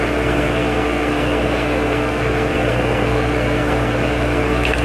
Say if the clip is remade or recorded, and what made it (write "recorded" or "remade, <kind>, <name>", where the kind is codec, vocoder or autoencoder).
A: remade, codec, SNAC